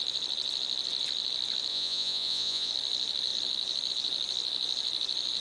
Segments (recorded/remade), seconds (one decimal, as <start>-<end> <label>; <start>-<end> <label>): 0.0-1.7 recorded; 1.7-2.7 remade; 2.7-5.4 recorded